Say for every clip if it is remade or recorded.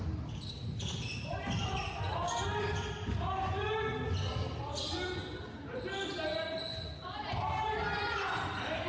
recorded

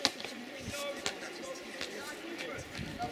recorded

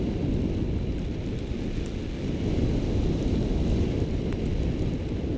recorded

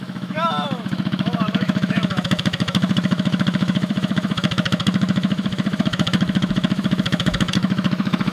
remade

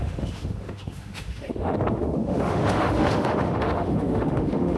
remade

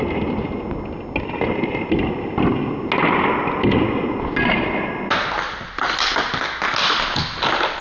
recorded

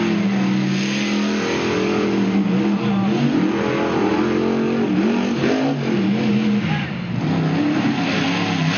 recorded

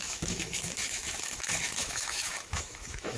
remade